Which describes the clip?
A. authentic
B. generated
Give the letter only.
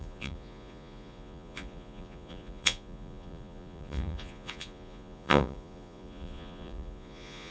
B